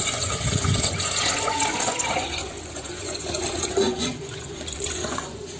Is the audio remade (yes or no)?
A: yes